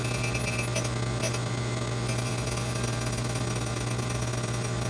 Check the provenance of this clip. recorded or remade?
recorded